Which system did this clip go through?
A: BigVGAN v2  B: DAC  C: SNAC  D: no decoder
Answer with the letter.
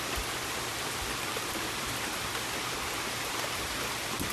A